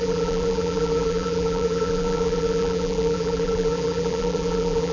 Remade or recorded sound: remade